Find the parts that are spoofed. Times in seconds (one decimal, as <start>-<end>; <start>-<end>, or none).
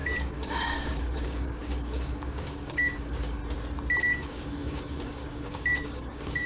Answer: 0.0-3.4; 4.0-6.5